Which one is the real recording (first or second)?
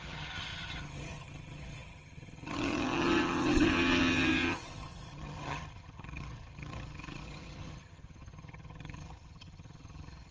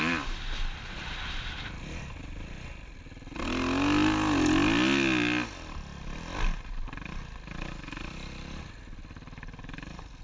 second